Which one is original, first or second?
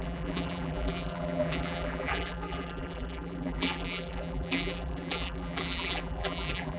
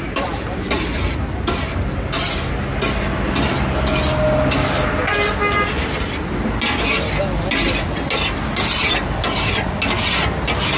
second